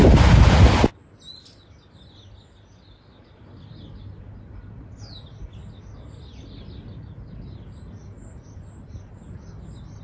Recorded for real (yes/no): yes